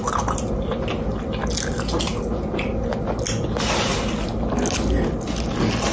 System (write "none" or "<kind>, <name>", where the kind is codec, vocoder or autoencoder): none